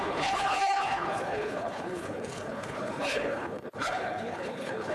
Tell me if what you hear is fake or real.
fake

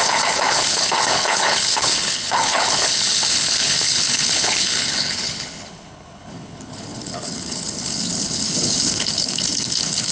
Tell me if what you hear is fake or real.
fake